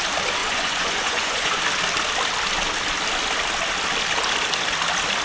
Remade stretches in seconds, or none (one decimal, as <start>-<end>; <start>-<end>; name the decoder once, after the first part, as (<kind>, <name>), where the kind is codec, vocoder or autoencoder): 0.4-1.6 (vocoder, Vocos)